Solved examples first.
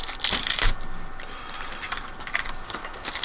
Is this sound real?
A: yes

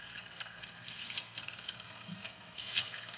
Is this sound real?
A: no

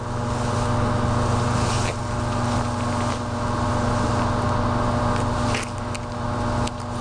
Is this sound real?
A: yes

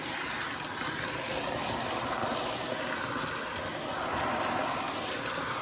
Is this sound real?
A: yes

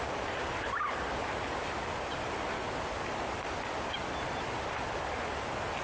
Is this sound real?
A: yes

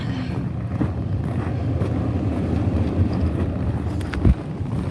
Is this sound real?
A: yes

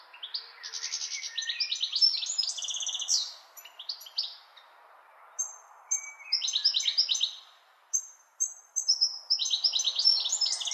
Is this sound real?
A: yes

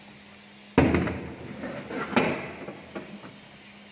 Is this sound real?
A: yes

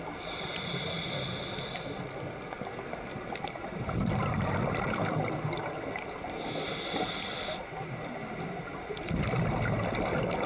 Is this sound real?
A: yes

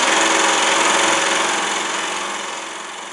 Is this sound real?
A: yes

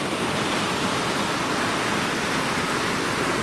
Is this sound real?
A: yes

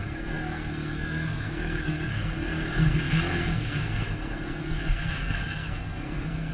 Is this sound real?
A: no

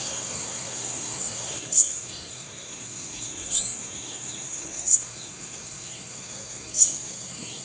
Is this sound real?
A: no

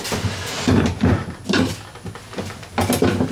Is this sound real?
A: yes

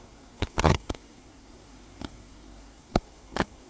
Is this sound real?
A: no